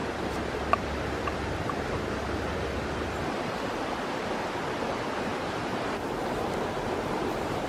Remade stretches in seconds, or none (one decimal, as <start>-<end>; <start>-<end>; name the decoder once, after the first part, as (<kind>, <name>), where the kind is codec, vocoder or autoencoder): 5.3-7.7 (vocoder, BigVGAN v2)